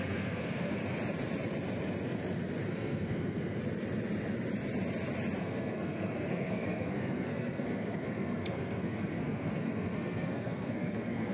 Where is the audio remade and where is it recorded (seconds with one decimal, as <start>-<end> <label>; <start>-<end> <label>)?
0.0-0.8 remade; 0.8-2.7 recorded; 2.7-3.6 remade; 3.6-5.4 recorded; 5.4-11.3 remade

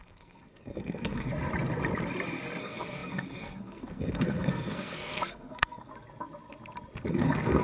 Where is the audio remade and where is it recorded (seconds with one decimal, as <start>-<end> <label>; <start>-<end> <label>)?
0.0-1.3 remade; 1.3-2.6 recorded; 2.6-5.9 remade; 5.9-7.1 recorded; 7.1-7.6 remade

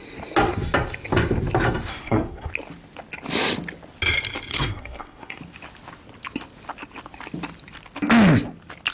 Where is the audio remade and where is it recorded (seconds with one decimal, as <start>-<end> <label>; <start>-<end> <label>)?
0.0-1.9 recorded; 1.9-2.5 remade; 2.5-4.5 recorded; 4.5-5.4 remade; 5.4-8.9 recorded

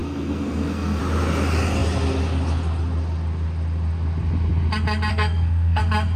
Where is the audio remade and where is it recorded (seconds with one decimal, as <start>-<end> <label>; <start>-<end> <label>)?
0.0-1.0 remade; 1.0-5.1 recorded; 5.1-5.8 remade; 5.8-6.2 recorded

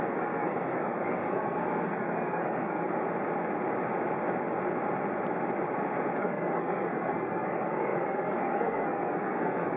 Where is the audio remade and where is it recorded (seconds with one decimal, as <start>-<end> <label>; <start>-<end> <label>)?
0.0-2.9 remade; 2.9-6.2 recorded; 6.2-9.8 remade

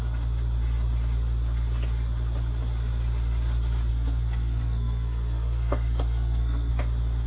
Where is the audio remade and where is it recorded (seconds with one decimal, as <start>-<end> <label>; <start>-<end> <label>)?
0.0-3.9 recorded; 3.9-6.7 remade; 6.7-7.3 recorded